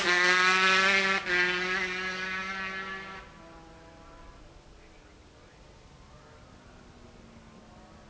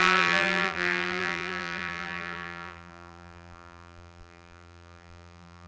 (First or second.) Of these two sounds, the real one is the first